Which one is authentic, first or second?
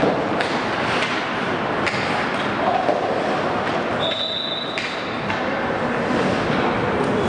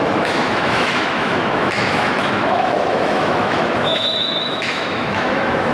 first